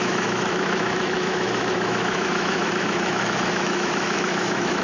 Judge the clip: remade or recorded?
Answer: remade